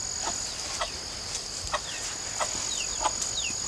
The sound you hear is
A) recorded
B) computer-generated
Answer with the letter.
A